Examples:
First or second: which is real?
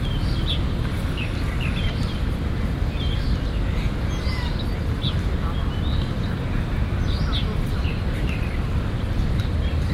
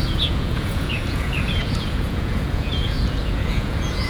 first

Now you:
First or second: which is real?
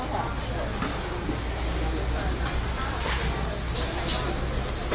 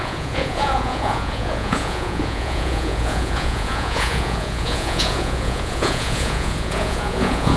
first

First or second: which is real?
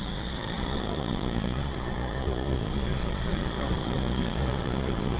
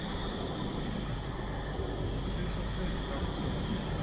second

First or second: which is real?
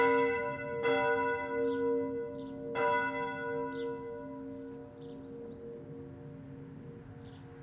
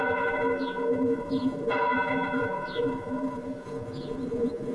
first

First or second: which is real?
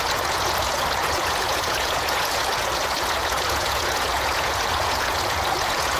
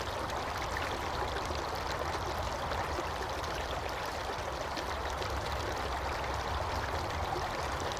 second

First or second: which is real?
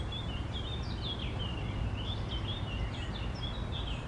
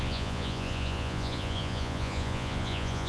first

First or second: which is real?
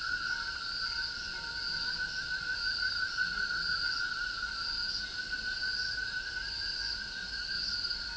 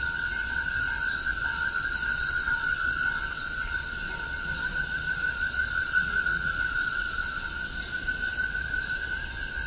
first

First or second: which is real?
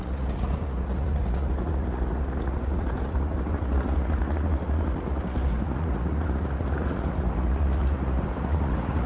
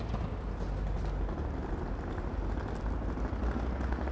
second